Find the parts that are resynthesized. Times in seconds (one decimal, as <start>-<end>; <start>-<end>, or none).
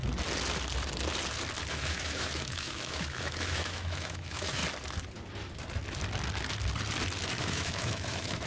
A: 1.7-4.6; 7.4-8.5